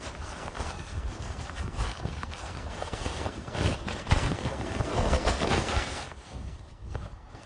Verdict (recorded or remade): remade